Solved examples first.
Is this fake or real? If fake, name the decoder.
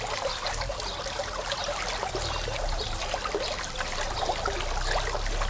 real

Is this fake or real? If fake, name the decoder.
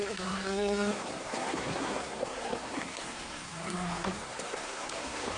fake, codec, SNAC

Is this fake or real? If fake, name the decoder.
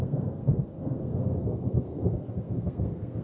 fake, codec, SNAC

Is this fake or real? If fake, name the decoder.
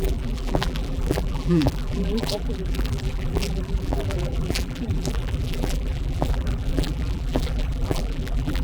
fake, vocoder, BigVGAN v2